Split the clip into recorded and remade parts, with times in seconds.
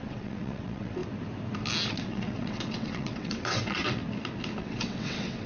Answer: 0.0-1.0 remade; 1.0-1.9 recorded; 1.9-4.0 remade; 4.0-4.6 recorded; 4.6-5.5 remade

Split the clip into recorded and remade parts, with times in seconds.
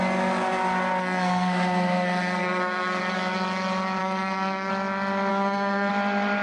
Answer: 0.0-1.0 recorded; 1.0-3.0 remade; 3.0-4.0 recorded; 4.0-4.7 remade; 4.7-5.3 recorded; 5.3-5.9 remade; 5.9-6.4 recorded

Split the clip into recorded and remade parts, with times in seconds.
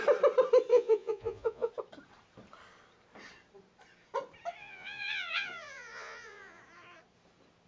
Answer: 0.0-0.7 recorded; 0.7-1.7 remade; 1.7-4.6 recorded; 4.6-6.6 remade; 6.6-7.7 recorded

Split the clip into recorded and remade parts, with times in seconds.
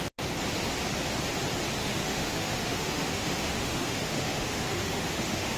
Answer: 0.0-1.8 recorded; 1.8-5.6 remade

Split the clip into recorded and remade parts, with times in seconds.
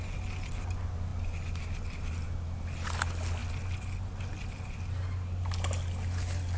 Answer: 0.0-6.6 recorded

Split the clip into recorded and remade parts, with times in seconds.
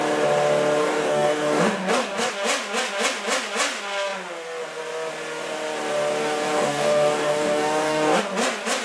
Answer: 0.0-0.8 recorded; 0.8-2.3 remade; 2.3-6.2 recorded; 6.2-8.2 remade; 8.2-8.8 recorded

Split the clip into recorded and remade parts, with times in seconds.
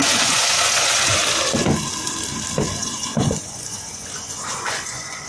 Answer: 0.0-1.2 remade; 1.2-2.7 recorded; 2.7-5.3 remade